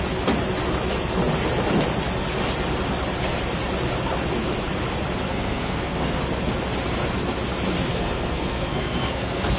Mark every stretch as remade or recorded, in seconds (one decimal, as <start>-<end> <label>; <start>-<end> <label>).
0.0-5.3 recorded; 5.3-6.2 remade; 6.2-7.9 recorded; 7.9-9.6 remade